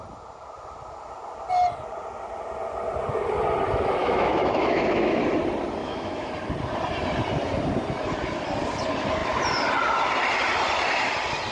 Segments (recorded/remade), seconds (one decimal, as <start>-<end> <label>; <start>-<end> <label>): 0.0-4.0 recorded; 4.0-5.2 remade; 5.2-5.8 recorded; 5.8-6.3 remade; 6.3-11.5 recorded